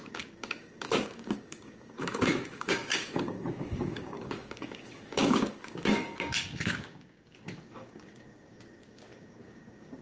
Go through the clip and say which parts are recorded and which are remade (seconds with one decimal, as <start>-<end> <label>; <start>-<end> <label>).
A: 0.0-10.0 remade